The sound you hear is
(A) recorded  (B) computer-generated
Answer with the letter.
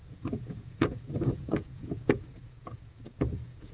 B